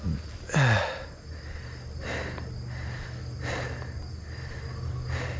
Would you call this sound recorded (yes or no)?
yes